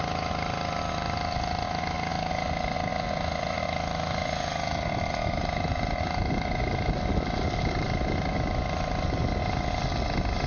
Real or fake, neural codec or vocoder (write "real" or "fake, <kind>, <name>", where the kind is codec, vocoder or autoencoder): real